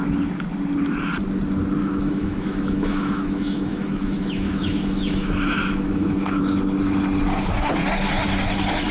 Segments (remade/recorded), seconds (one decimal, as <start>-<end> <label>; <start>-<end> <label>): 0.0-1.8 recorded; 1.8-6.4 remade; 6.4-8.9 recorded